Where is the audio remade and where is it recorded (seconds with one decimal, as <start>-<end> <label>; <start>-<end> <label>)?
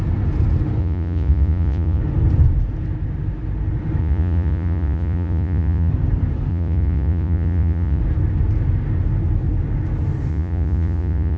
0.0-0.8 recorded; 0.8-2.0 remade; 2.0-4.0 recorded; 4.0-5.9 remade; 5.9-6.5 recorded; 6.5-8.0 remade; 8.0-10.3 recorded; 10.3-11.4 remade